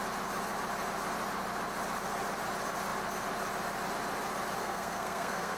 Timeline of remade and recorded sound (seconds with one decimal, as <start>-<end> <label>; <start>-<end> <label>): 0.0-4.6 recorded; 4.6-5.6 remade